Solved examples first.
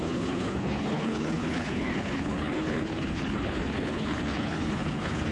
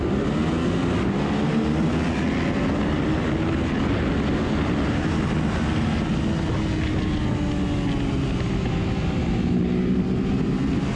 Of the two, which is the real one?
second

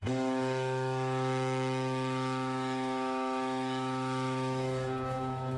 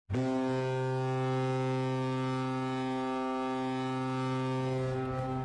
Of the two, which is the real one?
second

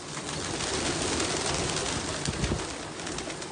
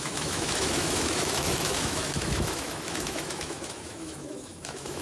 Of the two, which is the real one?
first